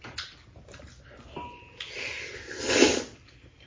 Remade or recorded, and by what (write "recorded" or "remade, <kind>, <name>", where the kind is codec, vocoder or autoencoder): remade, vocoder, BigVGAN v2